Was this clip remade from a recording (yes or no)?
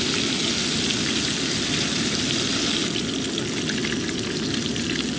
no